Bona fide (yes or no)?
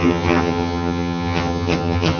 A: no